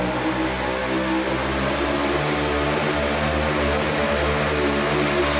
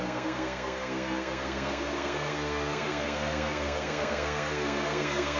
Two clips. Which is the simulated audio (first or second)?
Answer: second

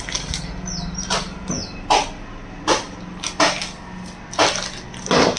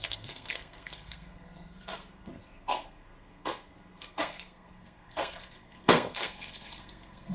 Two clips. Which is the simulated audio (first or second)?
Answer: second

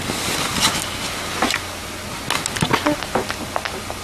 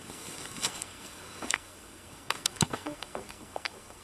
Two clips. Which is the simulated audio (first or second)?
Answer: second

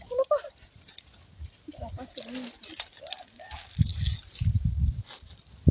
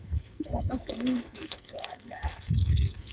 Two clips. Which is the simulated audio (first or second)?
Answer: second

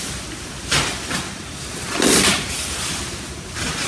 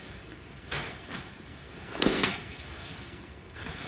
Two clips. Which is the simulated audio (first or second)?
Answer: second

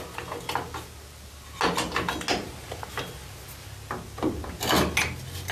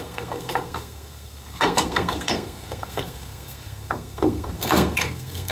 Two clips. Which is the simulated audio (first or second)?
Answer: second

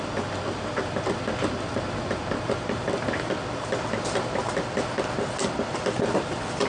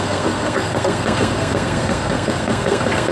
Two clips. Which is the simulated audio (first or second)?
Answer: second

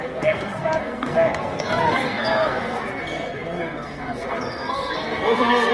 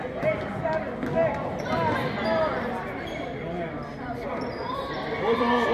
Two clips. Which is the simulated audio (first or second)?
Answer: first